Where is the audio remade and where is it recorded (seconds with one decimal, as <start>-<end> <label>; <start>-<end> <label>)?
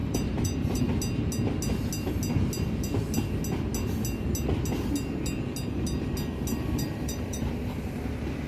0.0-0.8 remade; 0.8-6.5 recorded; 6.5-7.6 remade; 7.6-8.5 recorded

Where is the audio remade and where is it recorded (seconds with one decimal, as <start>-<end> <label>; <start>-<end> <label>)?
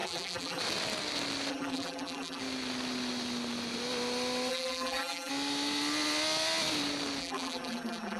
0.0-0.6 remade; 0.6-1.5 recorded; 1.5-2.4 remade; 2.4-4.5 recorded; 4.5-5.3 remade; 5.3-7.2 recorded; 7.2-8.2 remade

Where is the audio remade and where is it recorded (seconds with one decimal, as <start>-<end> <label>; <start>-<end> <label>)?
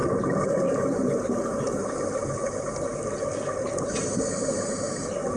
0.0-5.4 recorded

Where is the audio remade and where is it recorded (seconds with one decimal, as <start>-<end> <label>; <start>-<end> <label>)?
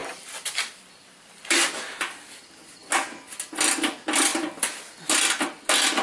0.0-1.4 remade; 1.4-6.0 recorded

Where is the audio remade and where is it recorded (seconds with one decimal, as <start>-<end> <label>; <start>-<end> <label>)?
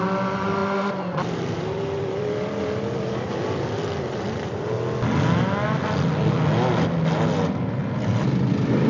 0.0-0.6 recorded; 0.6-4.7 remade; 4.7-7.8 recorded; 7.8-8.5 remade; 8.5-8.9 recorded